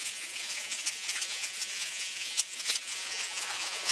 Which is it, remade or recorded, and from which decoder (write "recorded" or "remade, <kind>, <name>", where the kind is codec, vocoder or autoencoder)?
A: remade, vocoder, Vocos